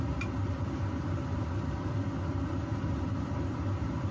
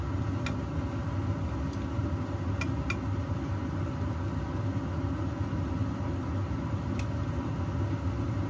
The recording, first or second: second